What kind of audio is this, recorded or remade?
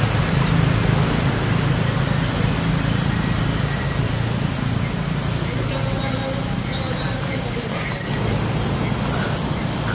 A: recorded